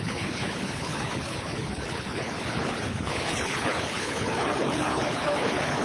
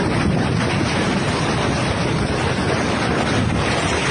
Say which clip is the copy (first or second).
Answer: first